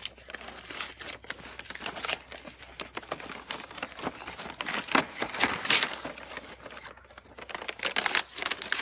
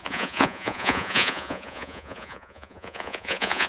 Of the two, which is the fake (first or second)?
second